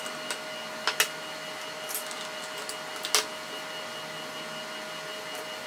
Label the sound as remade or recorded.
recorded